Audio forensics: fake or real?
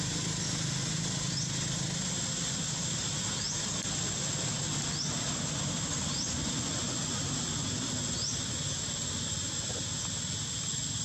real